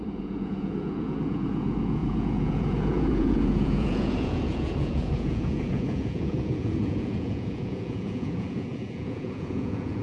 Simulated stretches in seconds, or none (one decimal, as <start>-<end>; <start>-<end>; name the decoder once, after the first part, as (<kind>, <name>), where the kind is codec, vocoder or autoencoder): 0.0-10.0 (vocoder, Vocos)

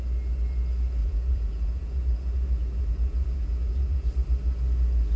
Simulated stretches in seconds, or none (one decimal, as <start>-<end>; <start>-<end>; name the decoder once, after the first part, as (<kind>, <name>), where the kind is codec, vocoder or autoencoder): 1.0-4.1 (vocoder, Vocos)

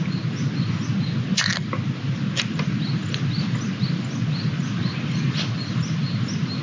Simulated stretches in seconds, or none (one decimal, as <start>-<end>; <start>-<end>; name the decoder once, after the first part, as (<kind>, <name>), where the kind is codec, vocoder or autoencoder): none